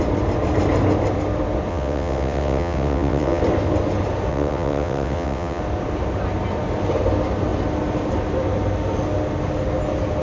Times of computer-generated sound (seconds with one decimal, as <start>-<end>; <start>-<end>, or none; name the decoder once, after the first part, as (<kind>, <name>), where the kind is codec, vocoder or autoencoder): 1.7-3.4 (vocoder, WaveNeXt); 4.3-5.6